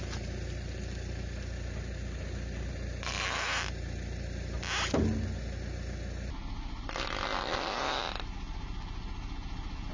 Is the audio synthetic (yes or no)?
no